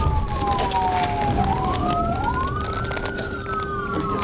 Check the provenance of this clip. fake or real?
real